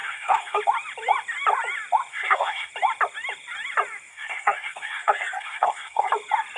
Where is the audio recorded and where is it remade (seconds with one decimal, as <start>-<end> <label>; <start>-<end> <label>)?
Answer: 0.0-0.6 remade; 0.6-2.1 recorded; 2.1-2.7 remade; 2.7-4.1 recorded; 4.1-6.1 remade; 6.1-6.6 recorded